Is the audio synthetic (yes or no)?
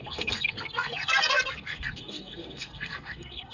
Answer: yes